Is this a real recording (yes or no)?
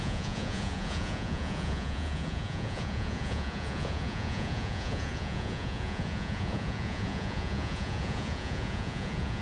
no